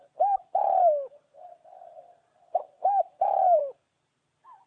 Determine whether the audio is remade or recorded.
recorded